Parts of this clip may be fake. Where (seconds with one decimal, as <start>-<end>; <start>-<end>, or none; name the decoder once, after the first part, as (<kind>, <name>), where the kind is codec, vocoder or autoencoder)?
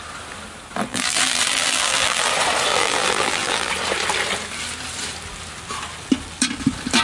0.9-2.3 (vocoder, BigVGAN v2); 2.7-3.7